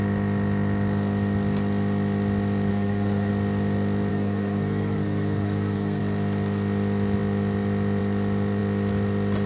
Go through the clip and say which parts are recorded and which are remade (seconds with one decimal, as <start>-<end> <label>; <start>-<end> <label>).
0.0-2.7 recorded; 2.7-3.3 remade; 3.3-4.1 recorded; 4.1-6.0 remade; 6.0-9.5 recorded